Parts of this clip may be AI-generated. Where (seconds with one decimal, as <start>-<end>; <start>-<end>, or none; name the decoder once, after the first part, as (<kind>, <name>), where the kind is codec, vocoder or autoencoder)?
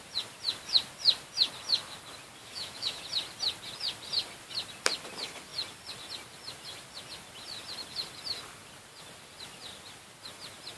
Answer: 2.4-3.0 (autoencoder, DAC-VAE)